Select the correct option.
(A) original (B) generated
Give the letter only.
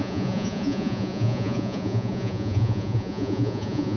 B